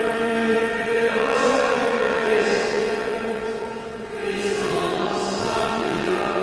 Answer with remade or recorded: remade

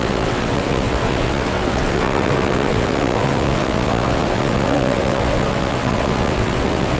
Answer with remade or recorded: remade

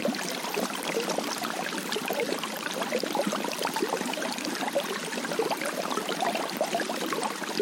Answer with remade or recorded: recorded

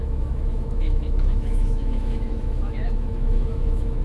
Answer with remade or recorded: remade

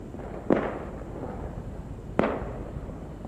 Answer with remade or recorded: recorded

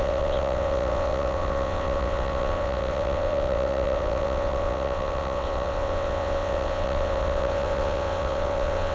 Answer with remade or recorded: remade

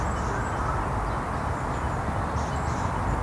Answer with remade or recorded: recorded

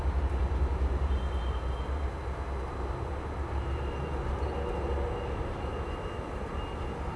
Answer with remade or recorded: recorded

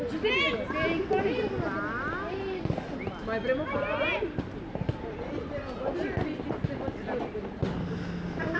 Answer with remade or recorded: recorded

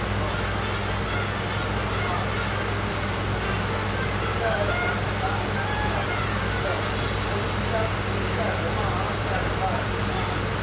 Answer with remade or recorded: recorded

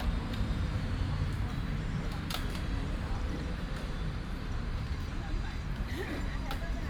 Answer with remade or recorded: remade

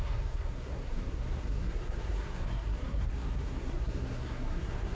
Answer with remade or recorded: remade